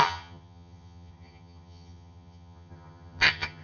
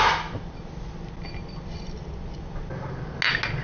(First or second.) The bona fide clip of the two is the second